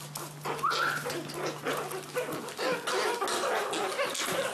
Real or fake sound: real